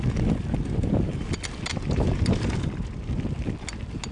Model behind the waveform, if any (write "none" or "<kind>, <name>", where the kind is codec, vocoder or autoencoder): none